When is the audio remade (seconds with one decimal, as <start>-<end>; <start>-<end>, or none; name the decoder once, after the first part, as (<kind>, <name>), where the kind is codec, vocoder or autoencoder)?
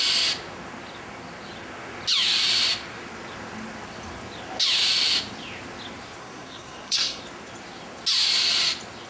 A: 6.2-7.2 (codec, SNAC)